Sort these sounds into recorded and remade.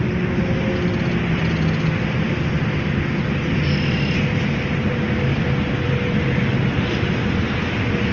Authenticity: recorded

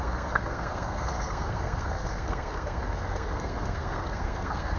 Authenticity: remade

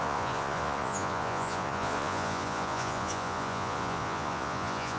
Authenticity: remade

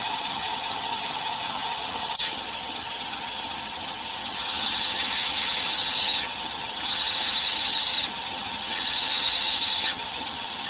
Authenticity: remade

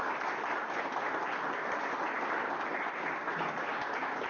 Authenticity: recorded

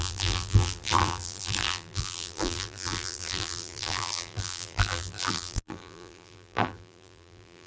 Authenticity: remade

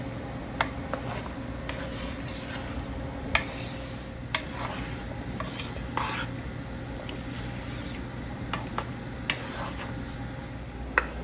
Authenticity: recorded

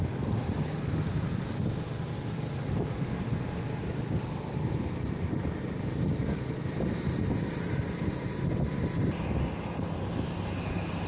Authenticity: recorded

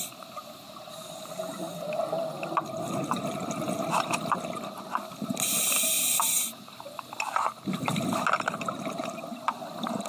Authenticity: recorded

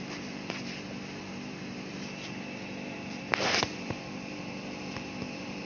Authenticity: remade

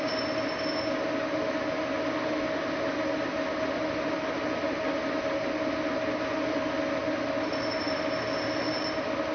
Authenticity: recorded